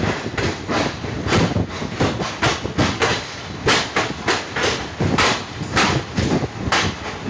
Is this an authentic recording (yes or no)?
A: yes